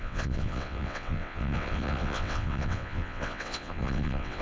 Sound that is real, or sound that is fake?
fake